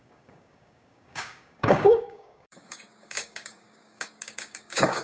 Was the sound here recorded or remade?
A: remade